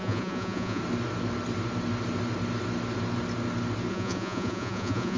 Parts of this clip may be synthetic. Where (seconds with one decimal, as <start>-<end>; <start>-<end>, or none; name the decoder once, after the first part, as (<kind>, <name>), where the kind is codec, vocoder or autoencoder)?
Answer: 0.0-0.8 (vocoder, Vocos); 3.9-5.2